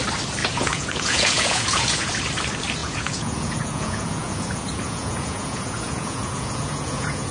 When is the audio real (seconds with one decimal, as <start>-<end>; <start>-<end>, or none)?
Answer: 0.0-0.4; 2.1-2.8